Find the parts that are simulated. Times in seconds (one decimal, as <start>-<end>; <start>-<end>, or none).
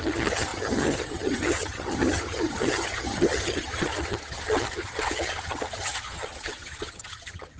0.0-7.6